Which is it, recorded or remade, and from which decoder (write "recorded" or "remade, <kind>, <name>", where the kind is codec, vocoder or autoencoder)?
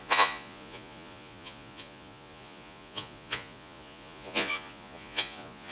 remade, vocoder, Vocos